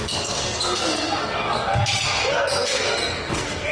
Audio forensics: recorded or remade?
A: remade